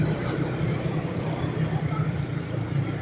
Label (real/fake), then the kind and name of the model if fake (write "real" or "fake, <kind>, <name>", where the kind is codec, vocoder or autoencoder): fake, vocoder, BigVGAN v2